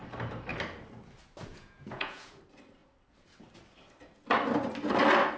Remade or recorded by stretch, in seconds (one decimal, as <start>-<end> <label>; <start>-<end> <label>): 0.0-1.5 recorded; 1.5-2.4 remade; 2.4-5.4 recorded

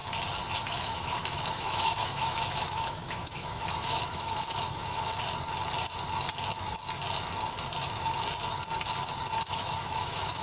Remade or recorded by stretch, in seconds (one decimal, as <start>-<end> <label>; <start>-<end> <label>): 0.0-0.6 recorded; 0.6-5.1 remade; 5.1-9.5 recorded; 9.5-10.4 remade

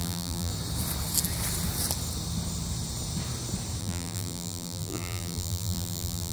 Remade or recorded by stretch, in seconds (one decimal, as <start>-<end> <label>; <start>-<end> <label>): 0.0-0.5 remade; 0.5-3.8 recorded; 3.8-6.3 remade